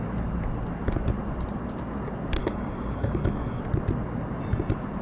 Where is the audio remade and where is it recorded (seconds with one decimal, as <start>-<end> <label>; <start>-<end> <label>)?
0.0-2.4 recorded; 2.4-3.6 remade; 3.6-5.0 recorded